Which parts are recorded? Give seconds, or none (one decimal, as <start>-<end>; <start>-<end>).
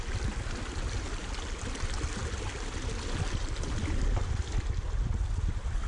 0.0-5.9